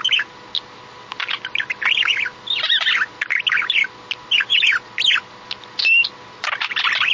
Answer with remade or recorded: recorded